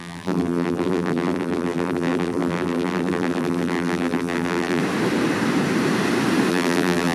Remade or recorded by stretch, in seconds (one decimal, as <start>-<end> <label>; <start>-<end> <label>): 0.0-4.8 remade; 4.8-6.5 recorded; 6.5-7.1 remade